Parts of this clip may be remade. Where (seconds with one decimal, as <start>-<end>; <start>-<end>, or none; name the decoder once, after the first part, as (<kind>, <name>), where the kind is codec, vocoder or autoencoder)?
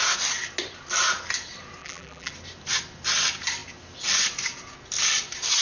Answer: 1.8-2.3 (vocoder, BigVGAN v2)